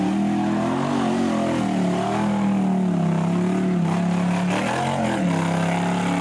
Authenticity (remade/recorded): recorded